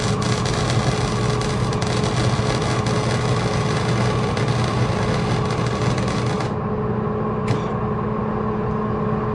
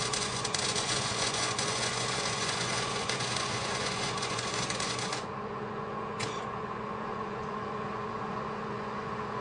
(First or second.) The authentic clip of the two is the first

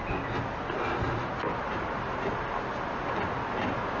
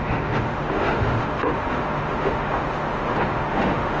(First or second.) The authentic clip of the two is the first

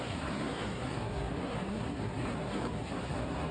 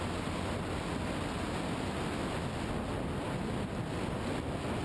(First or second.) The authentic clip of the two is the second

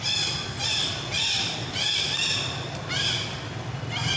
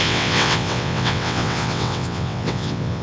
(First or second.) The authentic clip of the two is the first